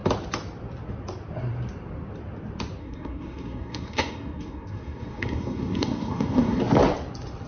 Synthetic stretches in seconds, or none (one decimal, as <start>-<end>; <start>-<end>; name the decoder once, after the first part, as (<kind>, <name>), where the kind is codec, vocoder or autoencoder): 2.8-6.6 (codec, SNAC)